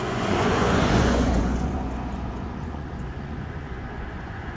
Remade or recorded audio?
remade